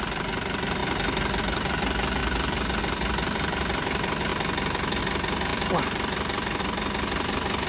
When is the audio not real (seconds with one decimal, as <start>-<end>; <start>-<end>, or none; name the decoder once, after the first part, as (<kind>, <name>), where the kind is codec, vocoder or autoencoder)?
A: 0.0-0.8 (vocoder, BigVGAN v2); 1.4-4.3; 5.0-7.7